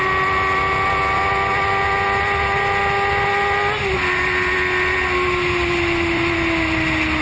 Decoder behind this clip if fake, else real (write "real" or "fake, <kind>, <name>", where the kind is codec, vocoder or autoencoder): real